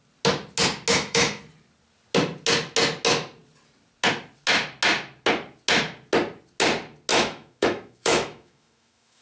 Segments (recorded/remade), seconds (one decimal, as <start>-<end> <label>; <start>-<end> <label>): 0.0-0.9 recorded; 0.9-1.4 remade; 1.4-7.1 recorded; 7.1-9.2 remade

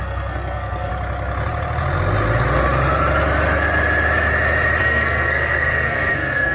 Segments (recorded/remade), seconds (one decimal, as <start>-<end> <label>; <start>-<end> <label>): 0.0-0.9 remade; 0.9-4.8 recorded; 4.8-6.5 remade

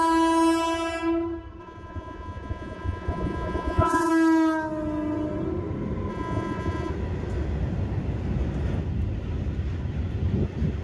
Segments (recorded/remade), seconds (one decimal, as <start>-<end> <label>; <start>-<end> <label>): 0.0-1.6 recorded; 1.6-4.1 remade; 4.1-6.1 recorded; 6.1-6.9 remade; 6.9-10.8 recorded

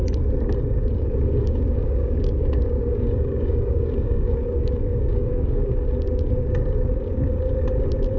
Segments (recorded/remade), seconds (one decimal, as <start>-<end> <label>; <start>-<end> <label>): 0.0-1.0 recorded; 1.0-5.9 remade; 5.9-8.2 recorded

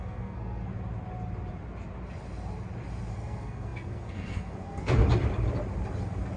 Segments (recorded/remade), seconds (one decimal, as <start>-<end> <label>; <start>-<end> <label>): 0.0-0.7 remade; 0.7-3.1 recorded; 3.1-5.0 remade; 5.0-6.4 recorded